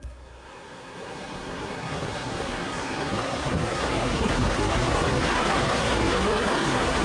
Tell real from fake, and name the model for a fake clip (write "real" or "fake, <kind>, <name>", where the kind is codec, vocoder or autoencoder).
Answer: fake, codec, SNAC